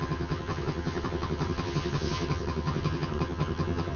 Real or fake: fake